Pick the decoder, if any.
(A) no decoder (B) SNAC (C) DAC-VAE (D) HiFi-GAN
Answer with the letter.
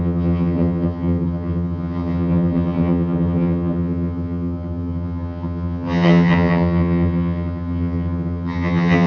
D